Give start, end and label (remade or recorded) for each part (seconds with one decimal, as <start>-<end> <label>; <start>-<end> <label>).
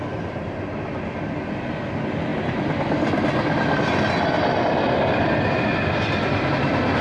0.0-7.0 recorded